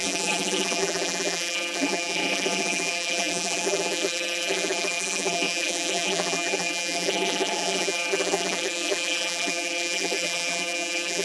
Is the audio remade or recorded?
remade